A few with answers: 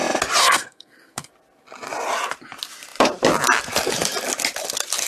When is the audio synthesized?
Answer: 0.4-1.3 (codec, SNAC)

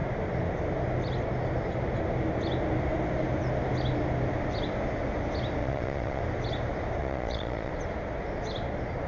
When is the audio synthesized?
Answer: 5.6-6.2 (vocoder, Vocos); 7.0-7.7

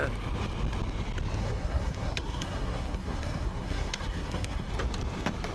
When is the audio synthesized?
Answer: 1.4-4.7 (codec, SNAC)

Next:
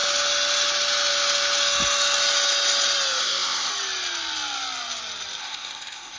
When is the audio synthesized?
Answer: 3.2-3.7 (codec, ZipCodec); 5.4-6.2